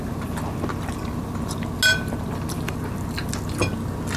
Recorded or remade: recorded